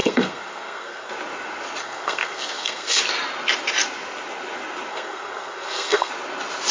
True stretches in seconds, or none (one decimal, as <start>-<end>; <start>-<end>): 1.1-1.8; 3.0-4.9; 6.1-6.7